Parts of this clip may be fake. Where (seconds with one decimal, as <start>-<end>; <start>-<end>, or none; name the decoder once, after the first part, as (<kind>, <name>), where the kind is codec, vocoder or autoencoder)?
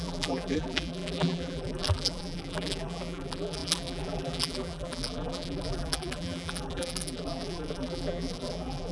0.0-8.9 (vocoder, BigVGAN v2)